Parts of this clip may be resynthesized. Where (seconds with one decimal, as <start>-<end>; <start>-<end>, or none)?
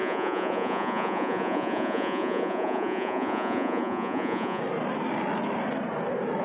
0.0-4.6